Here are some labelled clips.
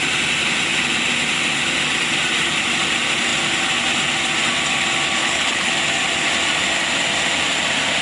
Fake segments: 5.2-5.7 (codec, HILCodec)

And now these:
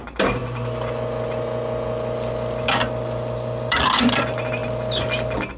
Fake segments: none

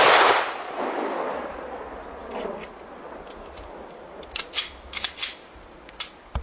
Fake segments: none

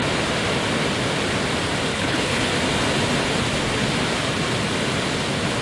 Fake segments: 1.9-2.5 (codec, HILCodec)